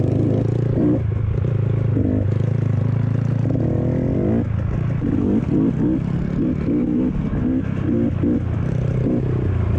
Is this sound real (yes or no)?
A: yes